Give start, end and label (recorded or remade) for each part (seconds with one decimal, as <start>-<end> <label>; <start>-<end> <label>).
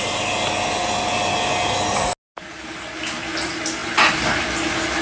0.0-5.0 recorded